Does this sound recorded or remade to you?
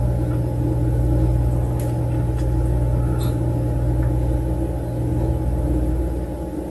recorded